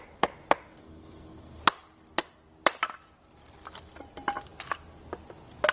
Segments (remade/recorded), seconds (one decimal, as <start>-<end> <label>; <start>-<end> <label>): 0.0-0.8 recorded; 0.8-1.6 remade; 1.6-5.7 recorded